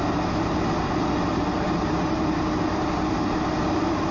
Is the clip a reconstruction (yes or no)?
no